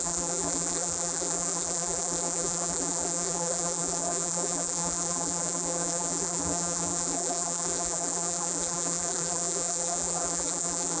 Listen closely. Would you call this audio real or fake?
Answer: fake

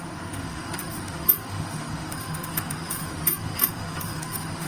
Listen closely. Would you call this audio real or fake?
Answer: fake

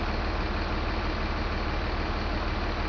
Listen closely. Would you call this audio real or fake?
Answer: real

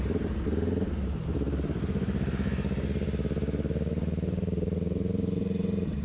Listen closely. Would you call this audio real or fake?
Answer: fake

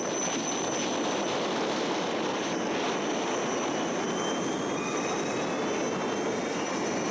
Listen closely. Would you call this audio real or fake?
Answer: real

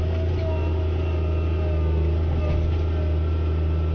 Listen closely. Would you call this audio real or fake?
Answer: real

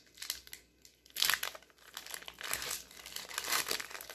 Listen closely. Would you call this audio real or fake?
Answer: real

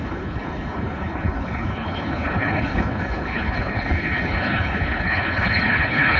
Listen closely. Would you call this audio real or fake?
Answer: fake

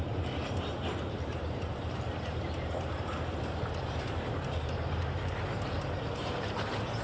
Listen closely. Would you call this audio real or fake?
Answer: fake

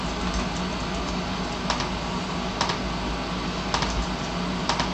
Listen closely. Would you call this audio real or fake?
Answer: real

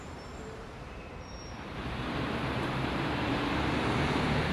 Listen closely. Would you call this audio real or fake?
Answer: fake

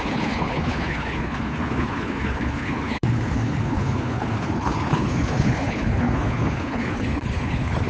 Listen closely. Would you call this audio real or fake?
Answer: fake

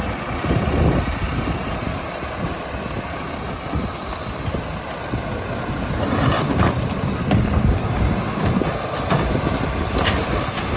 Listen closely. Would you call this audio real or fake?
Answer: real